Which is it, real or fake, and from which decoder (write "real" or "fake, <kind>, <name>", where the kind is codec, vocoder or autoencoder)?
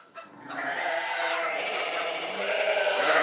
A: fake, vocoder, BigVGAN v2